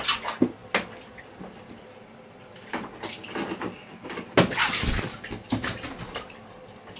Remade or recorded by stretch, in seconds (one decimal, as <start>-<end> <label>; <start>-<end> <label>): 0.0-7.0 recorded